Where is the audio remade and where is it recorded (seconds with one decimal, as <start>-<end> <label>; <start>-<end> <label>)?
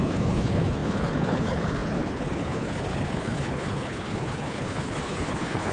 0.0-5.7 remade